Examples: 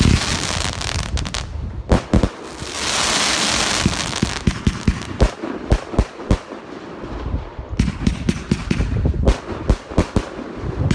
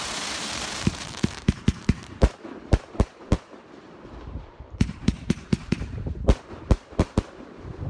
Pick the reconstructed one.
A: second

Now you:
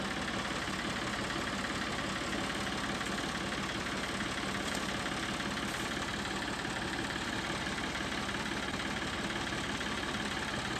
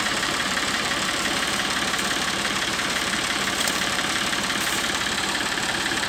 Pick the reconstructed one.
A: second